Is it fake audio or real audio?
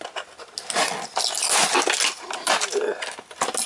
real